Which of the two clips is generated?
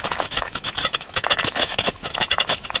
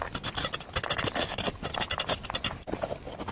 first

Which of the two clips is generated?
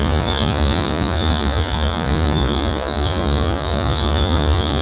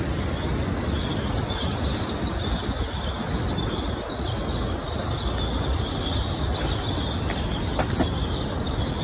first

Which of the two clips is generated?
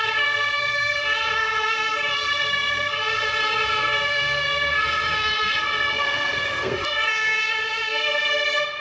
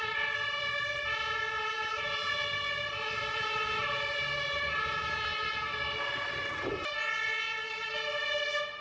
first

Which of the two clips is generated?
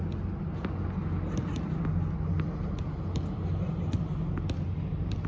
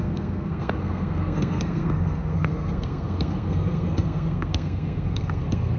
second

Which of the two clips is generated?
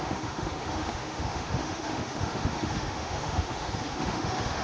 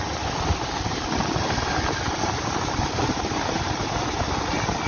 first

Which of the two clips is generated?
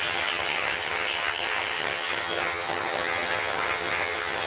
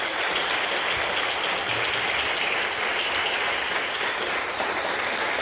first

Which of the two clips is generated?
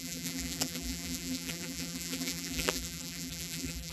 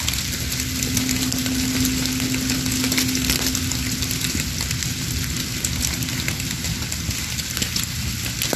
first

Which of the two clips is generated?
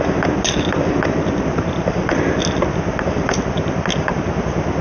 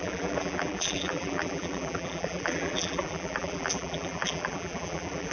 second